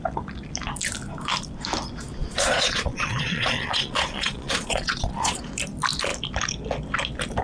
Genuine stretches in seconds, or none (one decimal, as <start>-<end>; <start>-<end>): 0.0-2.2; 5.4-7.4